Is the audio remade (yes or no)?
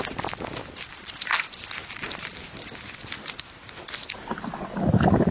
no